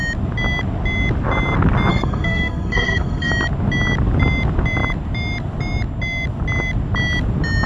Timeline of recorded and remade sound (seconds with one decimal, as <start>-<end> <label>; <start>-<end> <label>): 0.0-1.9 recorded; 1.9-3.3 remade; 3.3-7.7 recorded